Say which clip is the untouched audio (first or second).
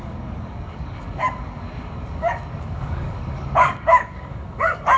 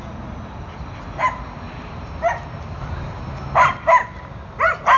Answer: second